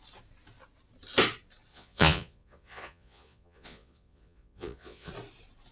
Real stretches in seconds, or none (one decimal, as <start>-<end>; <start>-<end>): 0.0-1.7; 5.1-5.7